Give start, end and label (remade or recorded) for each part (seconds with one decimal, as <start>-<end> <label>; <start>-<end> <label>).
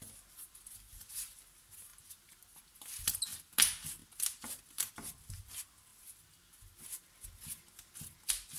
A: 0.0-8.6 recorded